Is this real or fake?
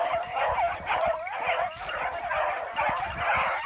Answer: real